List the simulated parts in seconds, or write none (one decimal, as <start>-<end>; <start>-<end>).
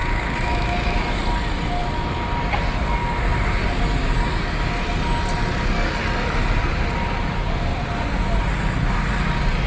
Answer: 0.0-1.2